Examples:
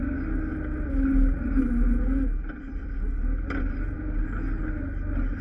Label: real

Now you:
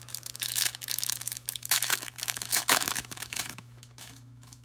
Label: fake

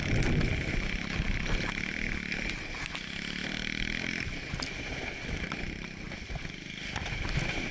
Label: real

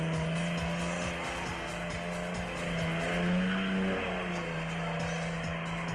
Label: real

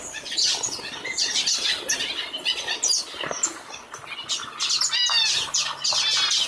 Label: real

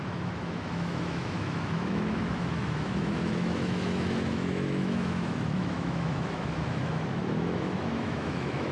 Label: fake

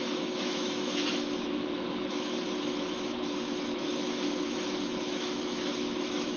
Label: fake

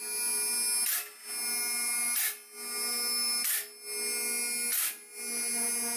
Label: real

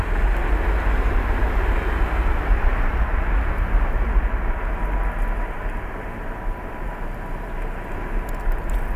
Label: real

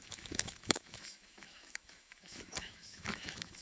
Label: fake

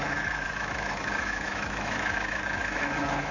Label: fake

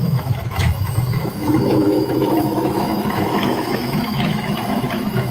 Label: fake